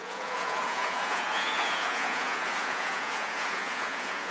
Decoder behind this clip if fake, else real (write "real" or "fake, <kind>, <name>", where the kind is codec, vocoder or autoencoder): fake, vocoder, Vocos